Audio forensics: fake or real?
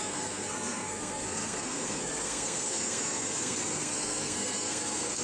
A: fake